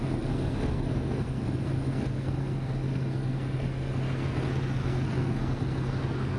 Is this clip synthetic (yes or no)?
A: yes